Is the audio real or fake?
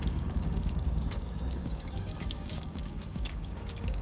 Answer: fake